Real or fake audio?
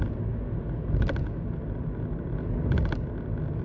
real